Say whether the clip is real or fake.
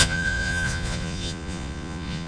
fake